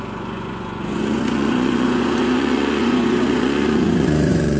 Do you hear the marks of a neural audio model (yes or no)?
yes